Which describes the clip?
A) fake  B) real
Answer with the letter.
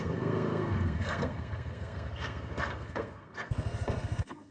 A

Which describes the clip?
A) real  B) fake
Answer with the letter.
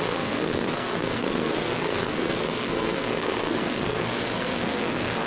B